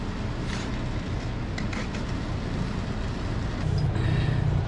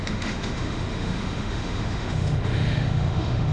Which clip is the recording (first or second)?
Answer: first